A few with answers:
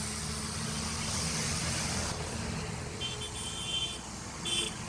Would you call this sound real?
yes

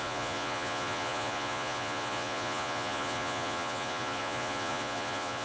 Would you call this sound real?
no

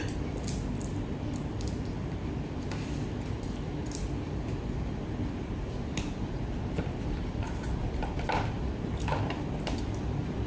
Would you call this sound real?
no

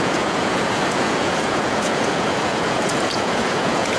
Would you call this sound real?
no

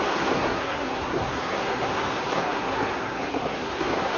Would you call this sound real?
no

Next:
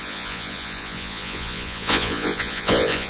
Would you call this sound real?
no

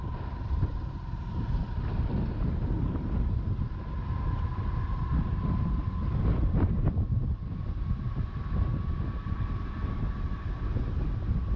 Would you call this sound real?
yes